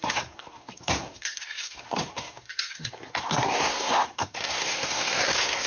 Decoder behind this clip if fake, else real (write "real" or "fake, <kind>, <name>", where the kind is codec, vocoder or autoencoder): fake, codec, SNAC